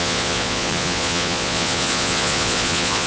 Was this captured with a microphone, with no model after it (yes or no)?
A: no